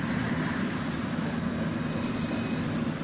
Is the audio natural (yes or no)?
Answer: yes